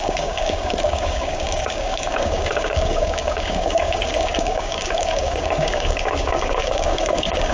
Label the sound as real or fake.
fake